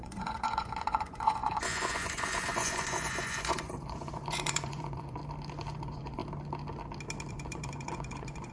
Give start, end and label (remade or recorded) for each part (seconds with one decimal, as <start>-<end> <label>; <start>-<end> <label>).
0.0-5.2 remade; 5.2-5.8 recorded; 5.8-6.2 remade; 6.2-7.3 recorded; 7.3-8.5 remade